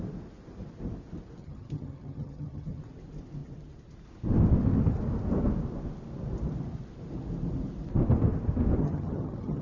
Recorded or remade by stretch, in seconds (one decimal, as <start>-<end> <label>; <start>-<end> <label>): 0.0-1.4 recorded; 1.4-2.8 remade; 2.8-8.8 recorded; 8.8-9.6 remade